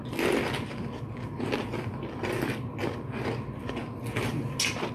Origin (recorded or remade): recorded